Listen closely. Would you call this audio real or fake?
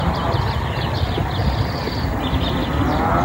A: real